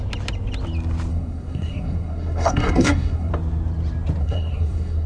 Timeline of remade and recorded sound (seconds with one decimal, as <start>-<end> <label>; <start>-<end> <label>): 0.0-1.1 recorded; 1.1-3.3 remade; 3.3-4.2 recorded; 4.2-5.1 remade